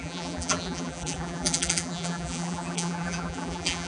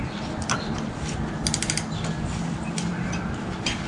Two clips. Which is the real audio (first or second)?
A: second